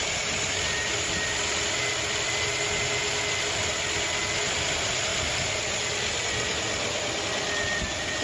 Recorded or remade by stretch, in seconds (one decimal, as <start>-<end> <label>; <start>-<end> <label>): 0.0-8.2 recorded